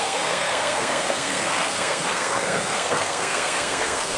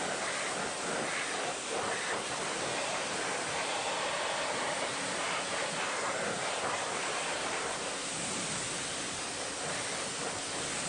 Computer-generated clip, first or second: first